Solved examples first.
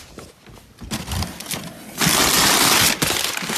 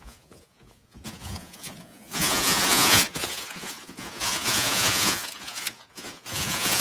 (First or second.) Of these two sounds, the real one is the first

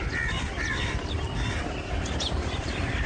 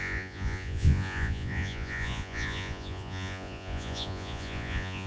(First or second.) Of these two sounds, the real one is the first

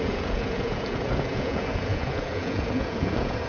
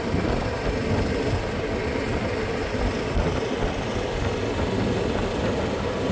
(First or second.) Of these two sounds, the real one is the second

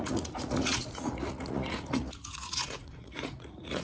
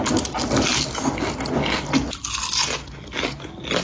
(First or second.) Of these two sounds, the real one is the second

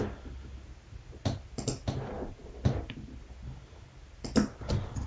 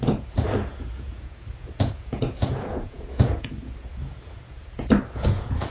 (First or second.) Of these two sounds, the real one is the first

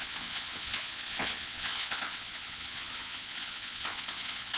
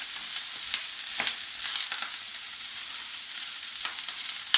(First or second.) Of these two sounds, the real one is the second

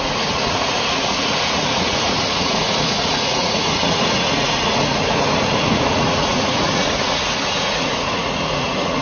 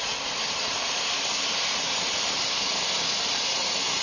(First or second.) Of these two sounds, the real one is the second